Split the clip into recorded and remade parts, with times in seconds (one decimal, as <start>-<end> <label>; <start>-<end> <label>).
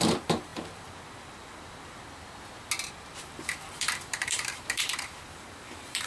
0.0-0.5 remade; 0.5-3.2 recorded; 3.2-6.1 remade